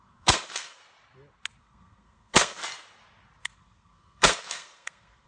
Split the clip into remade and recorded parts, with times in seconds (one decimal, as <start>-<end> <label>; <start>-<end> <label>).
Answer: 0.0-0.8 remade; 0.8-1.6 recorded; 1.6-2.6 remade; 2.6-3.4 recorded; 3.4-5.3 remade